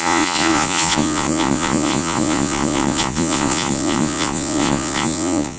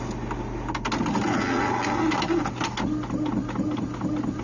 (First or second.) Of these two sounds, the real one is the second